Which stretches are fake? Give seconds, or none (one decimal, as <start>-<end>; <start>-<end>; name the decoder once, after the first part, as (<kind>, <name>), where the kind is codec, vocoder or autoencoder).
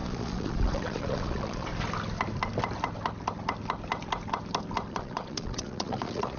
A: 0.0-1.7 (vocoder, Vocos); 4.9-6.4